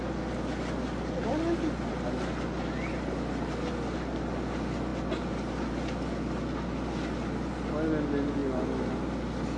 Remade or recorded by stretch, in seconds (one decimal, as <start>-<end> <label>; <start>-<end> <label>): 0.0-9.6 recorded